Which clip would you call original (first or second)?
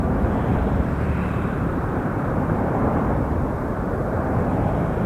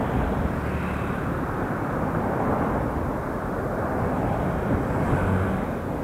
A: second